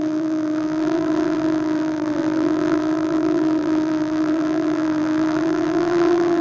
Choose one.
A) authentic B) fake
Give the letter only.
B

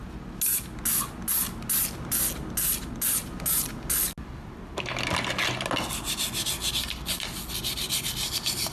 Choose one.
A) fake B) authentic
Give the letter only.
B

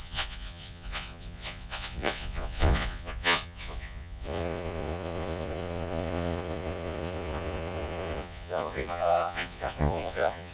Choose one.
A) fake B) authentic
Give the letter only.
A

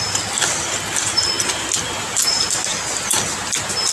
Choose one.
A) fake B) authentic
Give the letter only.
B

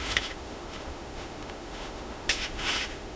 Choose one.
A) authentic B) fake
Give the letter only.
B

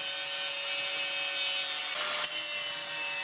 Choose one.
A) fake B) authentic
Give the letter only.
B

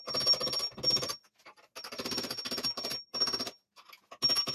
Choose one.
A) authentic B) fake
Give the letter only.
A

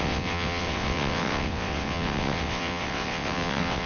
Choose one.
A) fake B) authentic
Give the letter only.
A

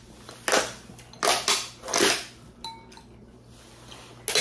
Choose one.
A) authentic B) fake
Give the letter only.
A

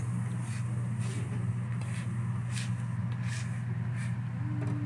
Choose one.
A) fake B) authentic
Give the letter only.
B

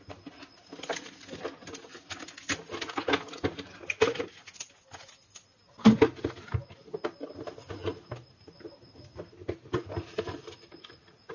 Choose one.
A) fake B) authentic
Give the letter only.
B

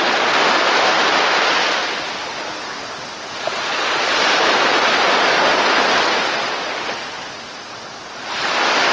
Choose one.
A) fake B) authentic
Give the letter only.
B